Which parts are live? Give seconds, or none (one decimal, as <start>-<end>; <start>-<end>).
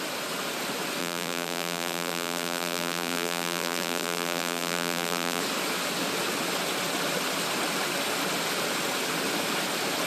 0.0-1.0; 5.4-10.1